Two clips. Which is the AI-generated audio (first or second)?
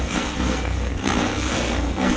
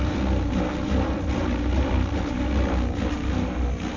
first